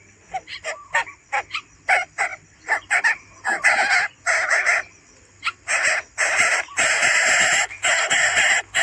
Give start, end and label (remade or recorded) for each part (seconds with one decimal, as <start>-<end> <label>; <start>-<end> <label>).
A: 0.0-8.8 recorded